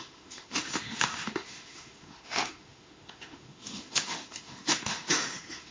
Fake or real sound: fake